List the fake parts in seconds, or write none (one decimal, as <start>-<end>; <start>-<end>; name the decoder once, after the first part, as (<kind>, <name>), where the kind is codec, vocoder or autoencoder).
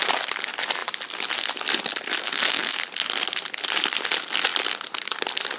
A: 2.2-2.8 (codec, SNAC)